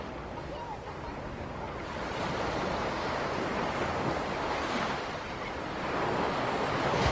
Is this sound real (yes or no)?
yes